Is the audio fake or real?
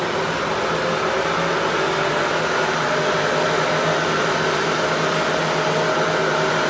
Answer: real